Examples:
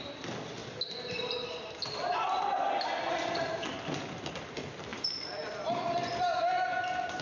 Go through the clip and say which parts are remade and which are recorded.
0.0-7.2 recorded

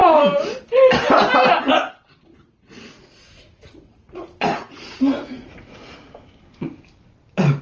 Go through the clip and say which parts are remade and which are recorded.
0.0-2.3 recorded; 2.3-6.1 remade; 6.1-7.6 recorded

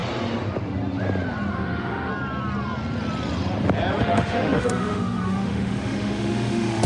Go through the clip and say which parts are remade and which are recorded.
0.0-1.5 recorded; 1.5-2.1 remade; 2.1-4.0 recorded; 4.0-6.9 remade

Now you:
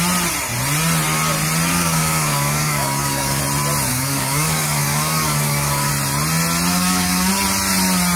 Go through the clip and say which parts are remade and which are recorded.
0.0-1.7 recorded; 1.7-3.4 remade; 3.4-3.9 recorded; 3.9-5.9 remade; 5.9-6.7 recorded; 6.7-7.3 remade; 7.3-8.2 recorded